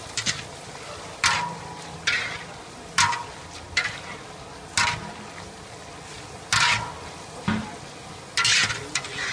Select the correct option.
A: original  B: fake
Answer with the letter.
A